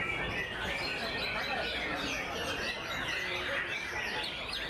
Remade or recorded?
recorded